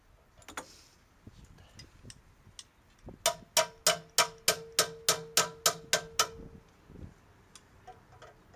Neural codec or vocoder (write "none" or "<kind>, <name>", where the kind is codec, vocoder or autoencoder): none